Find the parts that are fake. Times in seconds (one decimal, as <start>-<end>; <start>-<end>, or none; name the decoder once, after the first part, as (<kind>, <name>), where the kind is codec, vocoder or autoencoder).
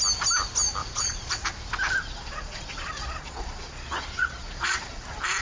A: 0.8-1.3 (vocoder, Vocos); 2.0-5.0